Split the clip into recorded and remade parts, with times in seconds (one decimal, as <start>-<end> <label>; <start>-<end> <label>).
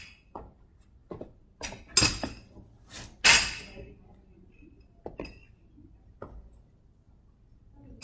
0.0-8.0 recorded